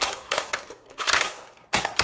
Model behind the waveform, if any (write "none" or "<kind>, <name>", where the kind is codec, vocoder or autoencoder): codec, SNAC